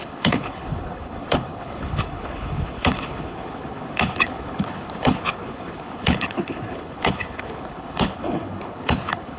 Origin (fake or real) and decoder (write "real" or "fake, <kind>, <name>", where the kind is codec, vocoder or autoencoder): fake, codec, HILCodec